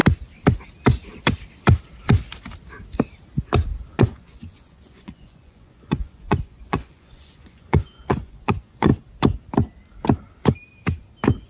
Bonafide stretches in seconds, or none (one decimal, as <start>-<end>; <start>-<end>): 0.0-4.0; 8.9-11.5